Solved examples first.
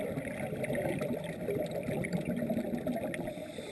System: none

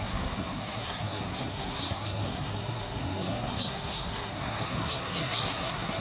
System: codec, SNAC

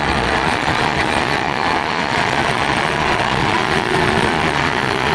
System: vocoder, Vocos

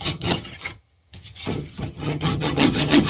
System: vocoder, HiFi-GAN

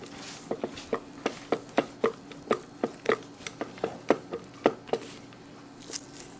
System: none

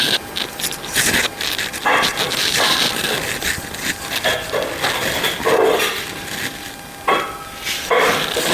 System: none